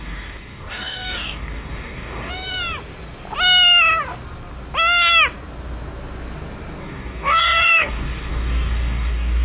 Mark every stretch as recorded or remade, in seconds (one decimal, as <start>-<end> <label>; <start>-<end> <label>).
0.0-2.3 remade; 2.3-6.8 recorded; 6.8-9.4 remade